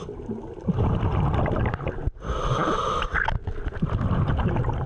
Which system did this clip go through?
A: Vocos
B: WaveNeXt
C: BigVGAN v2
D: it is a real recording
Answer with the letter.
D